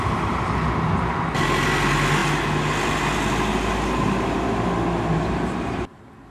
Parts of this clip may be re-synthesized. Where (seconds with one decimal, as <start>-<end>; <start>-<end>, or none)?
none